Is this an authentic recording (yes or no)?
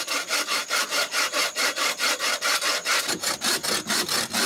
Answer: no